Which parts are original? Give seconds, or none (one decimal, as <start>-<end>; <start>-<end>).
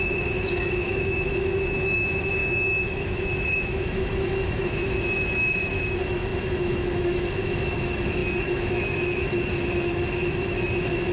none